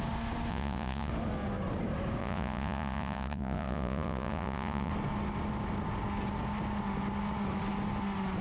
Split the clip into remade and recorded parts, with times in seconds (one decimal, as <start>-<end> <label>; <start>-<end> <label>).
0.0-0.5 recorded; 0.5-1.1 remade; 1.1-2.2 recorded; 2.2-4.9 remade; 4.9-8.4 recorded